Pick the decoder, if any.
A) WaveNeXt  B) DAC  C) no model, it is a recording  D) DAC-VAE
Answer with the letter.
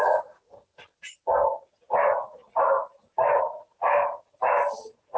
C